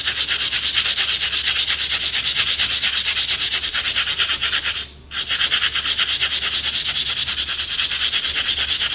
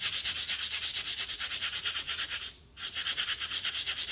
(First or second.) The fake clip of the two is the second